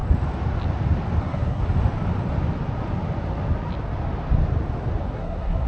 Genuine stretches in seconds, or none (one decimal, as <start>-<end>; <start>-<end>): 0.0-1.2; 1.6-5.0